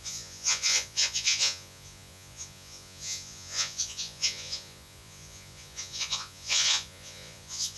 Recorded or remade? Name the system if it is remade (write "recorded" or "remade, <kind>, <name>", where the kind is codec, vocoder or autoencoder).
remade, vocoder, Vocos